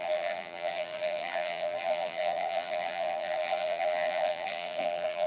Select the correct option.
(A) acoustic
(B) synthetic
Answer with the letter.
B